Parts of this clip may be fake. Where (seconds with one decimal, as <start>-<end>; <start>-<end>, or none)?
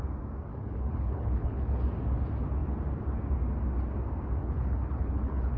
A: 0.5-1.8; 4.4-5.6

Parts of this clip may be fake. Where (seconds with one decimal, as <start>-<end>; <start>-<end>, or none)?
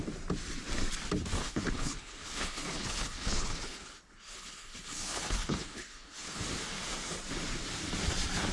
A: 1.4-6.4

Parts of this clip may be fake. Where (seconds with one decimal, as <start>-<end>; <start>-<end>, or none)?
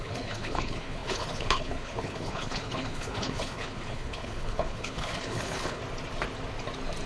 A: 0.0-5.8